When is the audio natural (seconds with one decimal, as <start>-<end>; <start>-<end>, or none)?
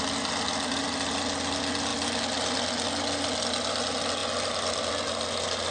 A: 0.0-5.7